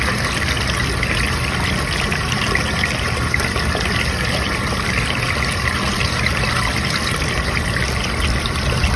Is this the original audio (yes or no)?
yes